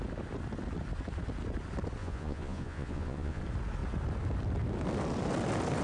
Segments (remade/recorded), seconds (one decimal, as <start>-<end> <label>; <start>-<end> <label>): 0.0-2.0 recorded; 2.0-3.4 remade; 3.4-5.8 recorded